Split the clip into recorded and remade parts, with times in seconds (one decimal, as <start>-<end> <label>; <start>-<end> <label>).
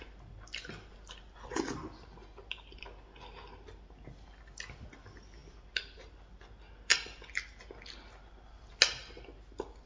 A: 0.0-5.4 recorded; 5.4-6.4 remade; 6.4-6.9 recorded; 6.9-7.6 remade; 7.6-9.9 recorded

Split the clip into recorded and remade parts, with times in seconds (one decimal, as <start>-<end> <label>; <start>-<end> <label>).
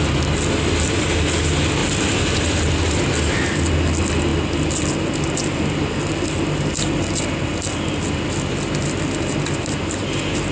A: 0.0-10.5 recorded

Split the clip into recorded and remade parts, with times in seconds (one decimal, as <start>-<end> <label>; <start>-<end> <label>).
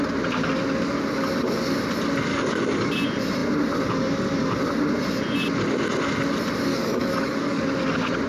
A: 0.0-2.3 recorded; 2.3-2.9 remade; 2.9-6.7 recorded; 6.7-7.6 remade; 7.6-8.3 recorded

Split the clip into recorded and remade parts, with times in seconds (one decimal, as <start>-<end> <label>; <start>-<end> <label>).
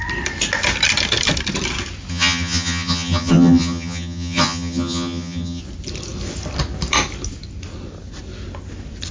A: 0.0-2.1 recorded; 2.1-5.6 remade; 5.6-9.1 recorded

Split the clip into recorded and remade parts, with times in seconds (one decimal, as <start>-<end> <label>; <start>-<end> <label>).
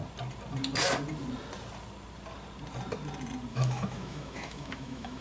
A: 0.0-3.5 recorded; 3.5-5.2 remade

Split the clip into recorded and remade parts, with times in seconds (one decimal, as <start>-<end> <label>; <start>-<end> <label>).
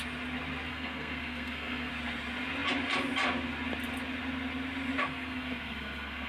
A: 0.0-0.7 recorded; 0.7-1.9 remade; 1.9-5.0 recorded; 5.0-6.3 remade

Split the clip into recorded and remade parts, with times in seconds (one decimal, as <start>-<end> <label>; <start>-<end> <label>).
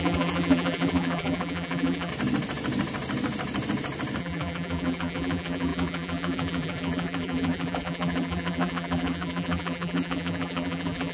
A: 0.0-2.1 remade; 2.1-4.2 recorded; 4.2-11.1 remade